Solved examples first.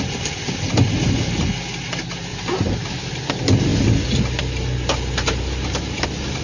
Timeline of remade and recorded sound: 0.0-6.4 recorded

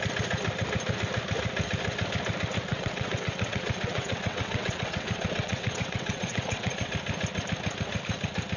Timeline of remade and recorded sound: 0.0-2.7 recorded; 2.7-6.9 remade; 6.9-8.6 recorded

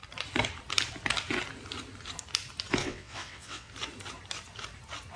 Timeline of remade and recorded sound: 0.0-2.8 recorded; 2.8-3.7 remade; 3.7-5.2 recorded

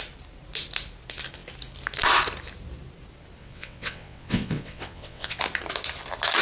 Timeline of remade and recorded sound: 0.0-3.4 recorded; 3.4-5.4 remade; 5.4-6.4 recorded

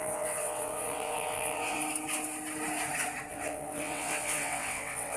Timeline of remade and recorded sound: 0.0-1.8 remade; 1.8-3.3 recorded; 3.3-5.2 remade